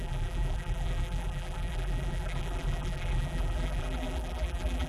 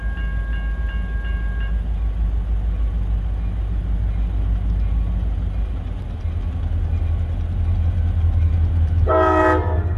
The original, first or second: second